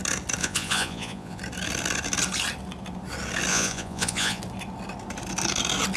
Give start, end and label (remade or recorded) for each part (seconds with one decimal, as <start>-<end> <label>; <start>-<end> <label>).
0.0-0.4 recorded; 0.4-1.4 remade; 1.4-3.5 recorded; 3.5-4.4 remade; 4.4-6.0 recorded